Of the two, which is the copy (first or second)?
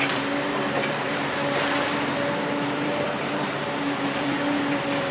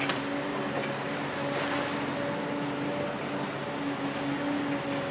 first